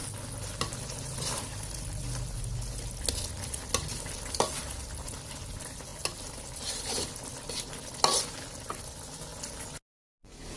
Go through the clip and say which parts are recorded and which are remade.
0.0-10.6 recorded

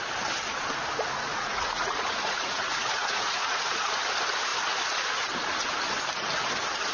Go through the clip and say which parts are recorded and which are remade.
0.0-1.3 recorded; 1.3-3.9 remade; 3.9-6.9 recorded

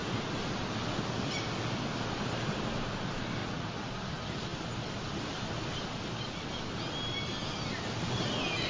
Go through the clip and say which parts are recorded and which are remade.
0.0-3.4 recorded; 3.4-3.9 remade; 3.9-8.7 recorded

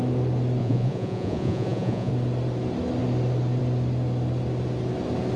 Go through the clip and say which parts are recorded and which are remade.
0.0-0.6 recorded; 0.6-2.1 remade; 2.1-5.4 recorded

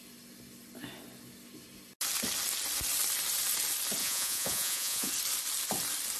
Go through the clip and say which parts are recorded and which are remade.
0.0-4.0 recorded; 4.0-5.1 remade; 5.1-6.2 recorded

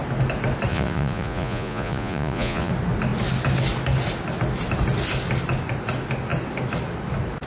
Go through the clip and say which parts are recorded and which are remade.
0.0-0.7 recorded; 0.7-2.7 remade; 2.7-7.5 recorded